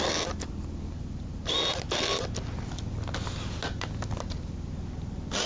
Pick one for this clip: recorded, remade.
recorded